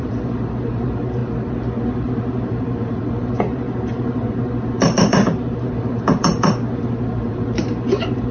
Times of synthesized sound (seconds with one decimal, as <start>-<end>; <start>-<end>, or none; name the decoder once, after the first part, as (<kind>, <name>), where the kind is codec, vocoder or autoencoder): 0.0-1.2 (vocoder, BigVGAN v2); 2.3-8.3

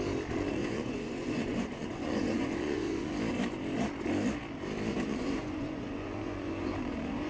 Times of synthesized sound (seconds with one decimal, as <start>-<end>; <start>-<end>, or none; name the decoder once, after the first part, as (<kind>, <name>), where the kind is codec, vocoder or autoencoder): 0.6-3.1 (vocoder, Vocos); 4.9-7.3

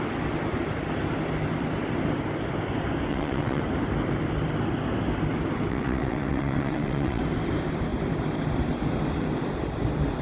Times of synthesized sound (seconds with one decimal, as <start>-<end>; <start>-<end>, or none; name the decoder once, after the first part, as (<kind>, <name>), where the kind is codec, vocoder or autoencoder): 3.1-3.6 (vocoder, WaveNeXt); 5.7-7.2